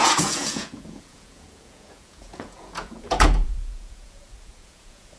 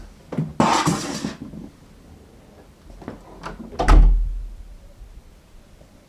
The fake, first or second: first